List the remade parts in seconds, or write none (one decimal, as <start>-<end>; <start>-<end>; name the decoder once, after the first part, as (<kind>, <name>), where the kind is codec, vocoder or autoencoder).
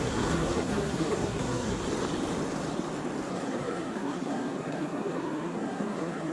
0.0-1.8 (codec, SNAC); 3.3-6.3